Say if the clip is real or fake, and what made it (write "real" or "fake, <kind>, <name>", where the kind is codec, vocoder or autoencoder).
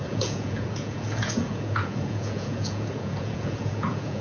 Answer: fake, vocoder, Vocos